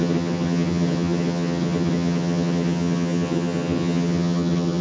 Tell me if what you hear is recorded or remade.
remade